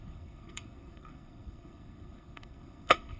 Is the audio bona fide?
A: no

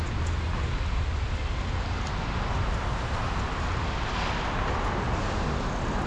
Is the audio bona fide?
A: yes